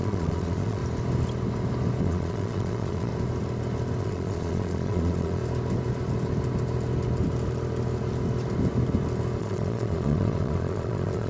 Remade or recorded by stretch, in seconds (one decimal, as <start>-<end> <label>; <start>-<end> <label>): 0.0-0.8 remade; 0.8-2.0 recorded; 2.0-3.1 remade; 3.1-4.0 recorded; 4.0-5.4 remade; 5.4-9.4 recorded; 9.4-11.3 remade